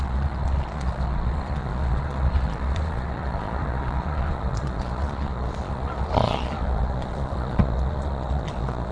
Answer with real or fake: fake